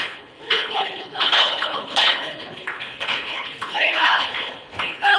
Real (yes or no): no